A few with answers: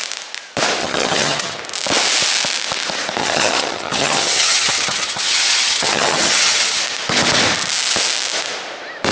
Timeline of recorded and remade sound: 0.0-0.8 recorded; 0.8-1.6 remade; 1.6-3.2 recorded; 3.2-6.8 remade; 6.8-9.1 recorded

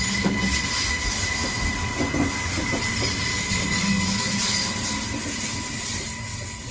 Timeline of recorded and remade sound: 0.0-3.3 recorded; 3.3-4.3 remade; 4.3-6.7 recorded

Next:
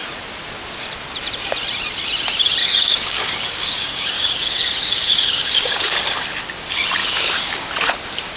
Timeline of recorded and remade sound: 0.0-2.6 recorded; 2.6-6.0 remade; 6.0-7.0 recorded; 7.0-7.7 remade; 7.7-8.4 recorded

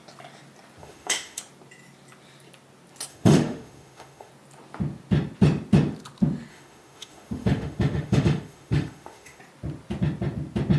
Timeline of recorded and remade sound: 0.0-0.8 recorded; 0.8-1.4 remade; 1.4-3.1 recorded; 3.1-4.3 remade; 4.3-6.5 recorded; 6.5-9.4 remade; 9.4-10.8 recorded

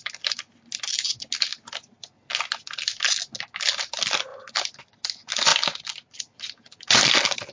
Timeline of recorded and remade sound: 0.0-7.5 recorded

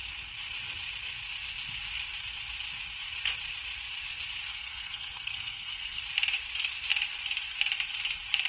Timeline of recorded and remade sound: 0.0-4.5 recorded; 4.5-6.0 remade; 6.0-8.5 recorded

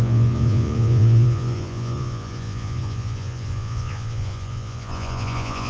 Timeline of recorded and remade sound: 0.0-5.7 remade